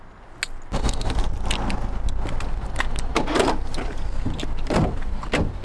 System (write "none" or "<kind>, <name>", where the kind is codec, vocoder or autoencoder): none